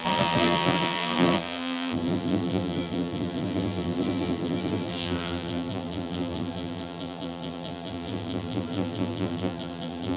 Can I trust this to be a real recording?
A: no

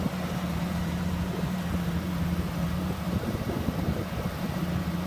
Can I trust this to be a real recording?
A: no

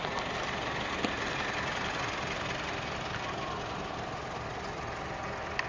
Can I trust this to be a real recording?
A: yes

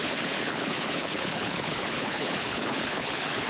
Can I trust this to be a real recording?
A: no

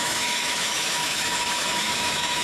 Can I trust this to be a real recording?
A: no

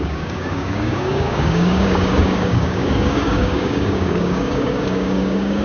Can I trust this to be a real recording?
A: no